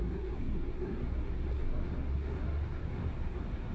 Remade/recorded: remade